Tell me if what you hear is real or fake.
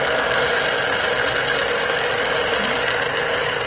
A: real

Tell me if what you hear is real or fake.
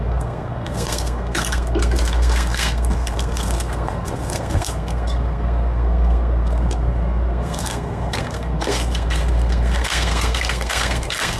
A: fake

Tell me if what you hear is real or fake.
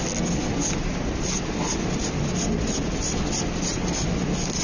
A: real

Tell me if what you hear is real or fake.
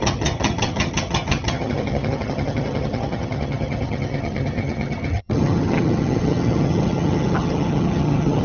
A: fake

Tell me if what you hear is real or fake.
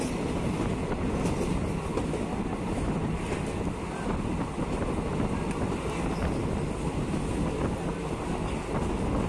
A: real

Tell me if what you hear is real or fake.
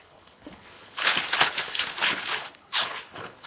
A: fake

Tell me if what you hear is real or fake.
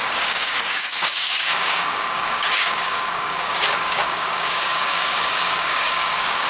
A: fake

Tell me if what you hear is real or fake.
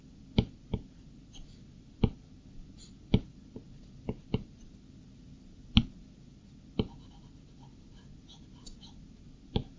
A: real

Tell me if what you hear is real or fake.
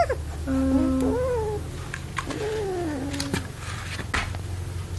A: real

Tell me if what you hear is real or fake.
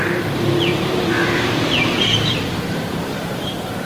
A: fake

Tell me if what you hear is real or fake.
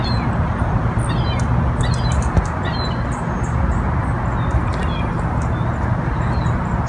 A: real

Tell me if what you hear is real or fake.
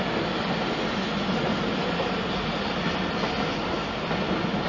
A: real